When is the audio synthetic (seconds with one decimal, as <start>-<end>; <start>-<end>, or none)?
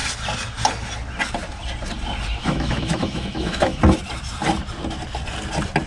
2.4-3.8